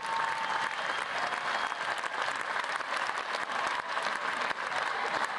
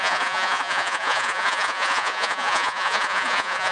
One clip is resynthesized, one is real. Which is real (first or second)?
first